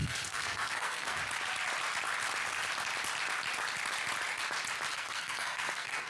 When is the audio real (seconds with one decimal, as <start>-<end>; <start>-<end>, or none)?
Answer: 1.2-4.9